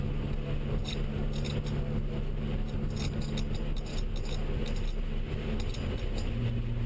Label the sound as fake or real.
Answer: real